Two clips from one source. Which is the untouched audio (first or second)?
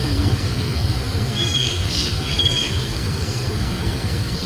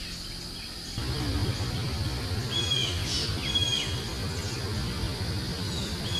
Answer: second